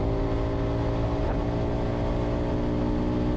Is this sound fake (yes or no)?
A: no